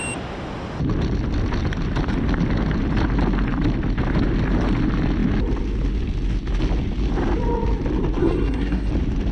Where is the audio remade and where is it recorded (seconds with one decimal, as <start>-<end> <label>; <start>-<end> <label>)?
0.0-8.2 recorded; 8.2-8.9 remade; 8.9-9.3 recorded